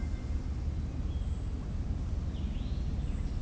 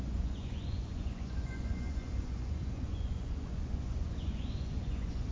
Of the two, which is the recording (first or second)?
first